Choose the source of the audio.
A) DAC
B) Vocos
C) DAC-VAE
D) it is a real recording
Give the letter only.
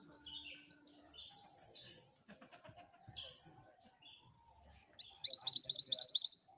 D